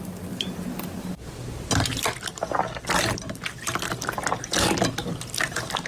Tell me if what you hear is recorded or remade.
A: recorded